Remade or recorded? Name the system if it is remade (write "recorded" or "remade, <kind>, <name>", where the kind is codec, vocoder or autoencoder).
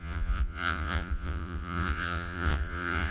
remade, vocoder, Vocos